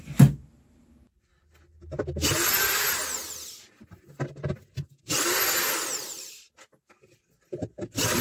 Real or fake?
real